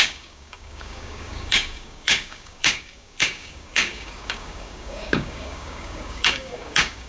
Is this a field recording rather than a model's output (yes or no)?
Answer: no